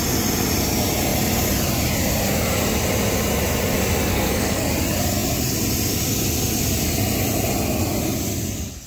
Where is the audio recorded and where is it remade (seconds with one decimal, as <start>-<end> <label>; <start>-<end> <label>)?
0.0-4.1 recorded; 4.1-4.7 remade; 4.7-8.9 recorded